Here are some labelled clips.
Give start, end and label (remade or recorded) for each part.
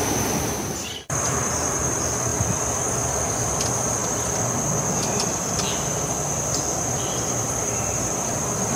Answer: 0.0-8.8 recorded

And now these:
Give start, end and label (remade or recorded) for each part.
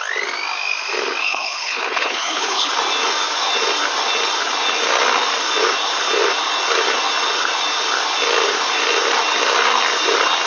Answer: 0.0-1.2 recorded; 1.2-2.7 remade; 2.7-10.5 recorded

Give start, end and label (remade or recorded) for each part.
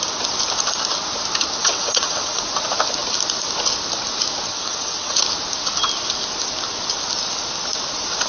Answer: 0.0-1.6 recorded; 1.6-2.4 remade; 2.4-4.5 recorded; 4.5-5.2 remade; 5.2-8.3 recorded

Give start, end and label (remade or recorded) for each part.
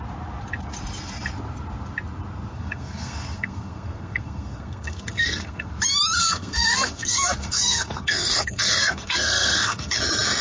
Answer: 0.0-2.5 recorded; 2.5-5.7 remade; 5.7-6.2 recorded; 6.2-10.0 remade; 10.0-10.4 recorded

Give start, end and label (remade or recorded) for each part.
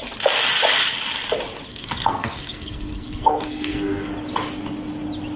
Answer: 0.0-1.7 recorded; 1.7-4.1 remade; 4.1-5.4 recorded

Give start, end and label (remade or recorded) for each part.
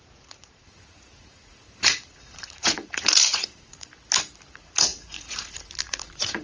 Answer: 0.0-3.9 remade; 3.9-4.5 recorded; 4.5-6.4 remade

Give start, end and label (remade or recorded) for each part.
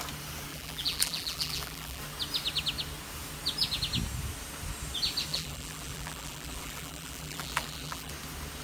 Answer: 0.0-0.5 recorded; 0.5-2.0 remade; 2.0-5.3 recorded; 5.3-8.1 remade; 8.1-8.6 recorded